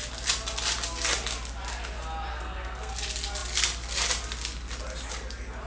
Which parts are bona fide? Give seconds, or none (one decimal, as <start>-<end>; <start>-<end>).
0.0-2.3; 2.9-5.7